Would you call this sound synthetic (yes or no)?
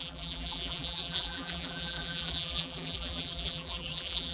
yes